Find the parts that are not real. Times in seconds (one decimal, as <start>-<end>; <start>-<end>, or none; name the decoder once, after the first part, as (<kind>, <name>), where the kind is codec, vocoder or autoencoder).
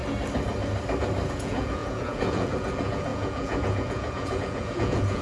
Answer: 1.3-5.2 (vocoder, Vocos)